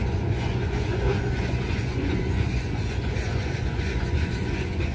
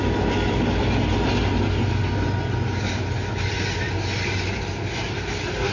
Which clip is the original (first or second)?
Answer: second